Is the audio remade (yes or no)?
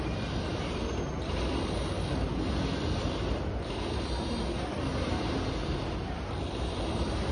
no